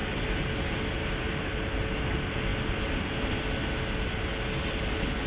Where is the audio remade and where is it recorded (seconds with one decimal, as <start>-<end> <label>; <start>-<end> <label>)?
0.0-5.3 recorded